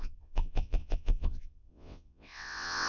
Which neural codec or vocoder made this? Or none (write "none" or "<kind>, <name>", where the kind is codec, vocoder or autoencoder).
vocoder, WaveNeXt